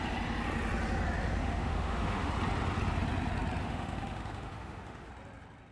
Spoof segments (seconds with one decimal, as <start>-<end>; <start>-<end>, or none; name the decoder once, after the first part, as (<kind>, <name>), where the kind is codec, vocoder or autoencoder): 1.4-2.3 (autoencoder, DAC-VAE); 3.6-5.1